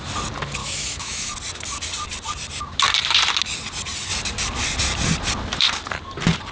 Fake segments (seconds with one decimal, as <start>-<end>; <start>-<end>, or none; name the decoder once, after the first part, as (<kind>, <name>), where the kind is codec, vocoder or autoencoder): 0.6-1.3 (autoencoder, DAC-VAE)